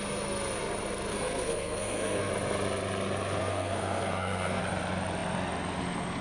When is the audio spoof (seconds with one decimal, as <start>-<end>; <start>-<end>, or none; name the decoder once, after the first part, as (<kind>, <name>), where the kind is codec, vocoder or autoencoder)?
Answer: 1.1-2.3 (codec, SNAC); 3.4-4.6